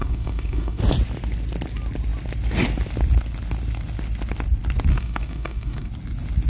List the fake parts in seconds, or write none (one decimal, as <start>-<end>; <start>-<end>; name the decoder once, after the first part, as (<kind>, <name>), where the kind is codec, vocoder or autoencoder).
0.0-0.8 (codec, DAC); 4.9-5.9